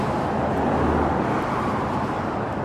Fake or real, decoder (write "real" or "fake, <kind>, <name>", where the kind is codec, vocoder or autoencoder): real